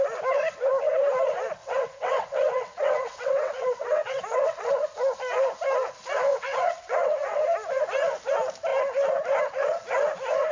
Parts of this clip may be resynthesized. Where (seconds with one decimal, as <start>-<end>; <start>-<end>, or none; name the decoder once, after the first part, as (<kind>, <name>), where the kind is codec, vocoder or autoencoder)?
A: 1.6-4.7 (vocoder, WaveNeXt); 6.3-7.4